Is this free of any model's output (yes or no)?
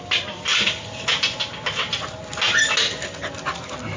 yes